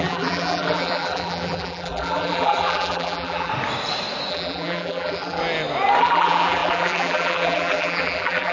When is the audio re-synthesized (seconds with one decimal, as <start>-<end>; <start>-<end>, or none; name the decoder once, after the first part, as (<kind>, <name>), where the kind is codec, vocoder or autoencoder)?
0.0-3.5 (vocoder, BigVGAN v2); 4.3-5.4; 6.0-8.5